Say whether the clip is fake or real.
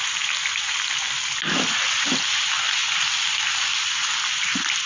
real